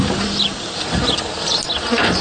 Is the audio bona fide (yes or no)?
yes